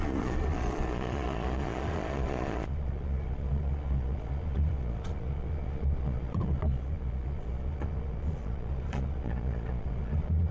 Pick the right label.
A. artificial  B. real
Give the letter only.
A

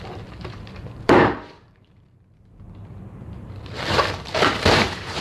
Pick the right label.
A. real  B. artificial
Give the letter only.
B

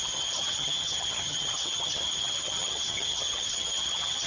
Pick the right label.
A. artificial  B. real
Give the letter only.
A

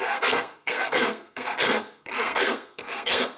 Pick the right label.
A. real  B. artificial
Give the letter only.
B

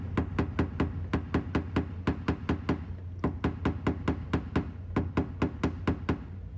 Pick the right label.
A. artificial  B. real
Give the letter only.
B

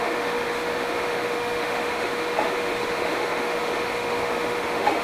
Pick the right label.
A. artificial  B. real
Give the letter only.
A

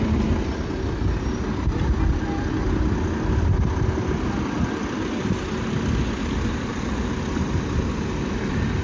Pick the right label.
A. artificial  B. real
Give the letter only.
B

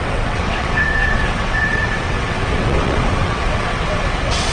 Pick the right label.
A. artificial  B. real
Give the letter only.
A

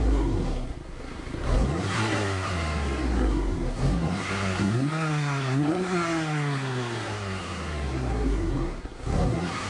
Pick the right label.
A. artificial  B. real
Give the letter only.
A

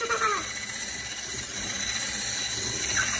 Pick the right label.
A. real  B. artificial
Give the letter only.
B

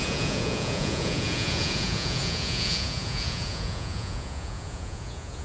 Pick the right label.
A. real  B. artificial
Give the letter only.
B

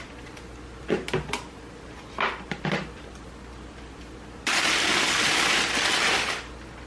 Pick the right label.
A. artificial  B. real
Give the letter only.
B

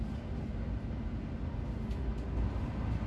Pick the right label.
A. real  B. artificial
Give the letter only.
A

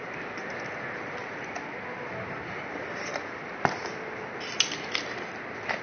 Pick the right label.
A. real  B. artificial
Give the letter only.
A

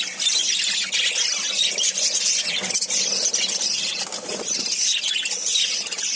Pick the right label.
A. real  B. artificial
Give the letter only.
A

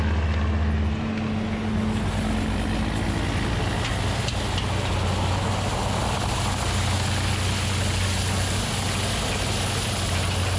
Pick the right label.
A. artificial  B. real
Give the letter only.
B